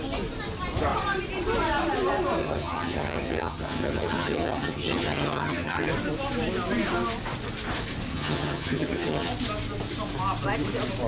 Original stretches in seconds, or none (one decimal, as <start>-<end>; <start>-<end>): 0.0-2.4; 5.9-8.1; 9.3-11.1

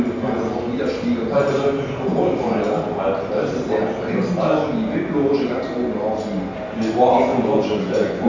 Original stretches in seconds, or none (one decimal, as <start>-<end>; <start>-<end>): 0.0-7.3

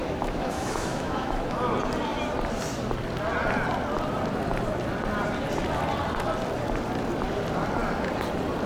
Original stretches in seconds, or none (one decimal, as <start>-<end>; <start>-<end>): 1.6-8.7

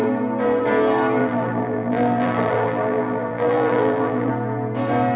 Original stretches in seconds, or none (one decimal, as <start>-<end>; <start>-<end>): 0.0-1.2; 4.3-5.2

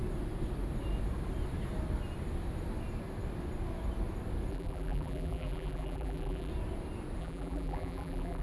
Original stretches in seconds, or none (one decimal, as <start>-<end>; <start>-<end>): 0.0-4.5; 6.5-7.2